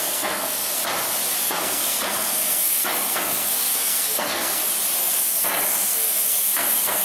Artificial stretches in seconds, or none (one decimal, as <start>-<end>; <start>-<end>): 0.0-0.8; 1.4-4.6; 5.1-7.0